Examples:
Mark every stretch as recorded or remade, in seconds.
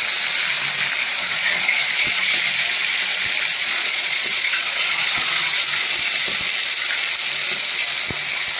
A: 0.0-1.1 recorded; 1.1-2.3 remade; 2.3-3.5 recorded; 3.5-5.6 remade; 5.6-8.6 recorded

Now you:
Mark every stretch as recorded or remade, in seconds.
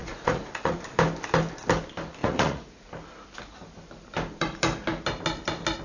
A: 0.0-0.8 remade; 0.8-2.2 recorded; 2.2-2.9 remade; 2.9-5.8 recorded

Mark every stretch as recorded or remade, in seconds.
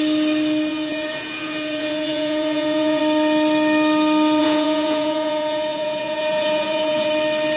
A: 0.0-0.7 recorded; 0.7-3.0 remade; 3.0-4.4 recorded; 4.4-7.1 remade; 7.1-7.6 recorded